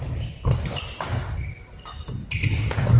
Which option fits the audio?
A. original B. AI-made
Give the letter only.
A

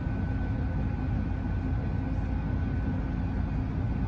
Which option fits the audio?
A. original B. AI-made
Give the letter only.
A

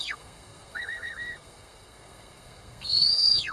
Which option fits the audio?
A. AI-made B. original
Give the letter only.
A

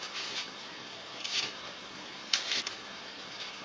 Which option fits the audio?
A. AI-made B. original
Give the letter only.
A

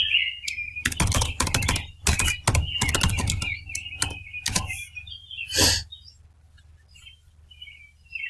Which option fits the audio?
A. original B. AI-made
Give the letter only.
A